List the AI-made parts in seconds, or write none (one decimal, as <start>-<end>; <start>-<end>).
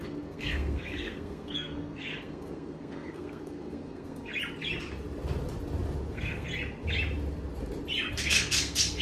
0.0-4.3; 6.1-6.5; 8.1-9.0